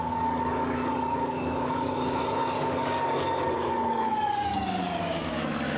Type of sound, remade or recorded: remade